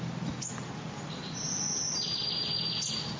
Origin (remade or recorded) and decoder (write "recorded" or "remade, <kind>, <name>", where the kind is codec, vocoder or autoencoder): recorded